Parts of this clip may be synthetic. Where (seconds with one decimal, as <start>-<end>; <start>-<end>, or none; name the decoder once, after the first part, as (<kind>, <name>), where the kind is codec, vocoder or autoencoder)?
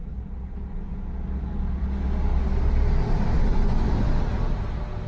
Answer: none